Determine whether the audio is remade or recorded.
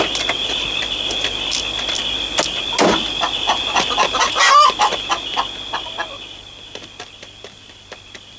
recorded